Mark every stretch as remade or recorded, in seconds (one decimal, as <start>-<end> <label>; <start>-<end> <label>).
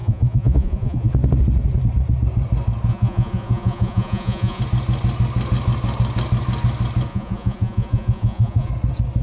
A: 0.0-1.1 remade; 1.1-2.9 recorded; 2.9-4.6 remade; 4.6-7.1 recorded; 7.1-8.7 remade; 8.7-9.2 recorded